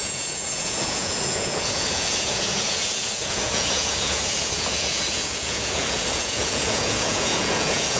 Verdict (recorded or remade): remade